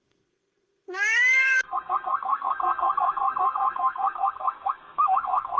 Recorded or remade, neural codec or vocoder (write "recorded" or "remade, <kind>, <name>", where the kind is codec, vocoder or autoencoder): remade, codec, SNAC